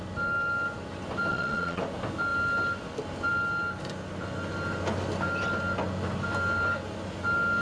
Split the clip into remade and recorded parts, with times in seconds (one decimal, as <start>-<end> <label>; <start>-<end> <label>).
0.0-1.3 recorded; 1.3-1.8 remade; 1.8-7.6 recorded